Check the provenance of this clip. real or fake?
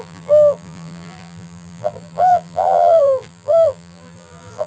fake